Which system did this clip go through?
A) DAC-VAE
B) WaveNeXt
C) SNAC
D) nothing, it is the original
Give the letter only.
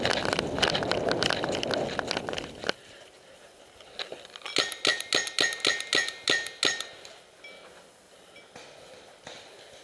D